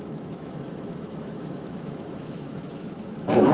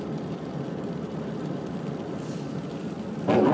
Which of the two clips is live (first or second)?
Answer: second